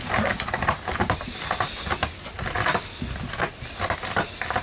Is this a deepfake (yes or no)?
no